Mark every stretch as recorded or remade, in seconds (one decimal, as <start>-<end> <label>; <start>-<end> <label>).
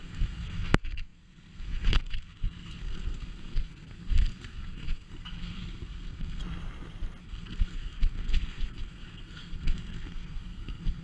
0.0-6.4 remade; 6.4-7.2 recorded; 7.2-11.0 remade